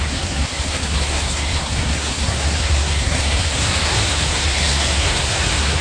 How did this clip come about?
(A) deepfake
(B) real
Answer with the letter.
A